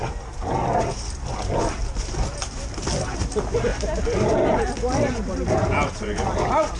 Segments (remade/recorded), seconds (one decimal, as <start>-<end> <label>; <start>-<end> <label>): 0.0-3.7 recorded; 3.7-4.6 remade; 4.6-6.8 recorded